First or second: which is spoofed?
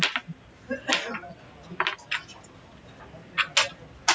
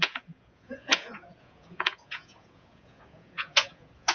second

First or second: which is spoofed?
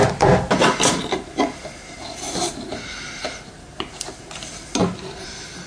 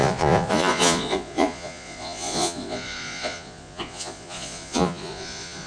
second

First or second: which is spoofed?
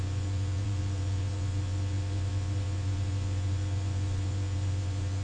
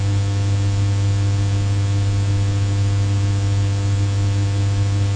first